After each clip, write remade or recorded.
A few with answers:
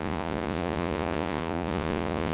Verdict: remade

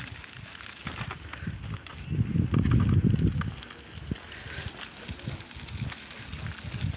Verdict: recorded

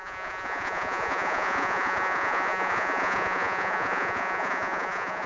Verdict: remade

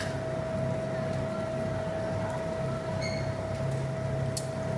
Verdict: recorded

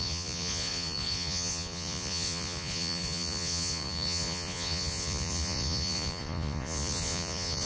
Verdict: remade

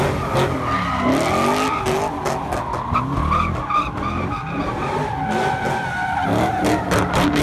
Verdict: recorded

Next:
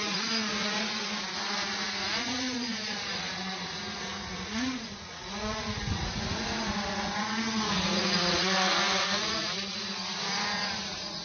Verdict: remade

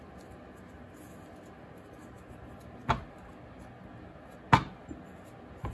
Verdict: recorded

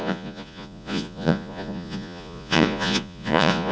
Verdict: remade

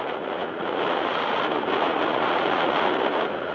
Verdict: remade